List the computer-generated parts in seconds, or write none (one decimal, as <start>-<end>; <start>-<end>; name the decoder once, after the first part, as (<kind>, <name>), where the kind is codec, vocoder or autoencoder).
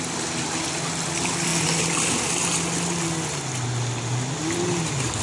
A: none